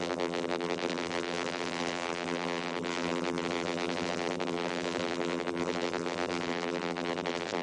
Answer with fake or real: fake